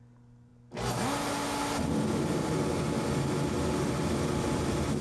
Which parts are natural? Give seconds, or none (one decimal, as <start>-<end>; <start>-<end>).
0.0-5.0